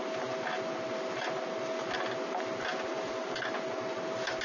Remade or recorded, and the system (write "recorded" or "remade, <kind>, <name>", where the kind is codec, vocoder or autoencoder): recorded